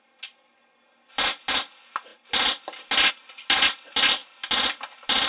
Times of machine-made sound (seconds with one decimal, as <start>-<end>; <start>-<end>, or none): none